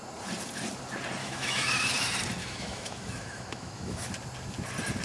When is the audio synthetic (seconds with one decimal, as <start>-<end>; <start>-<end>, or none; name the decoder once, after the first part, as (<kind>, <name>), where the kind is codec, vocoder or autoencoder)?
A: 1.2-1.7 (autoencoder, DAC-VAE); 2.4-4.1